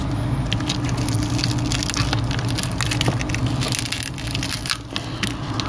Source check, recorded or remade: recorded